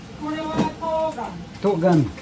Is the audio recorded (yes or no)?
no